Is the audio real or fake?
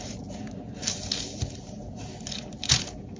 fake